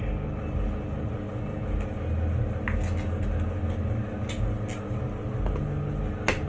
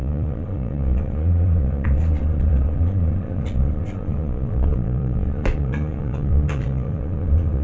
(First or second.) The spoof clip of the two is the second